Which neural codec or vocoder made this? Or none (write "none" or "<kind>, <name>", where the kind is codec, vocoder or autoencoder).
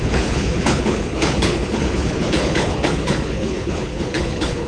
codec, HILCodec